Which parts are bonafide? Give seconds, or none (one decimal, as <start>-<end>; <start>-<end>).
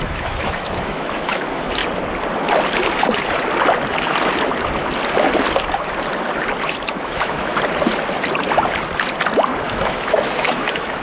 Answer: 1.8-6.7; 7.5-9.7